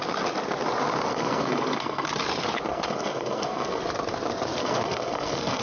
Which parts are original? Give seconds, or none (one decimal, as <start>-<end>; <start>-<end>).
0.0-1.1; 2.1-2.7; 3.8-4.6

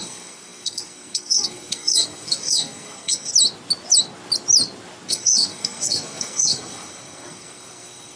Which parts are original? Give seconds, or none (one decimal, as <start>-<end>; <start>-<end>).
3.3-5.1

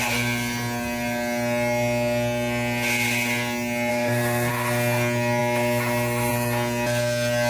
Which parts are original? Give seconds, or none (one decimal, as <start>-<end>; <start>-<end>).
0.0-3.9; 4.5-7.5

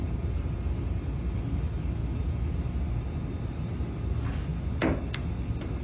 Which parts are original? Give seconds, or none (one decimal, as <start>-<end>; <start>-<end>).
0.0-5.8

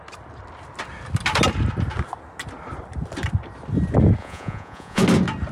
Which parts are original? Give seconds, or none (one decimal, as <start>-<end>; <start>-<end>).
0.0-4.2; 5.0-5.5

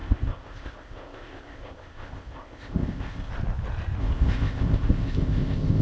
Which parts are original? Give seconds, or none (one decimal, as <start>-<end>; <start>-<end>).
3.3-4.0

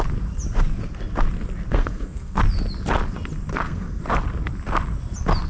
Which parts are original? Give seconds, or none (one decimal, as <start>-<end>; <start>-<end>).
0.0-1.7; 2.4-3.5; 4.0-5.5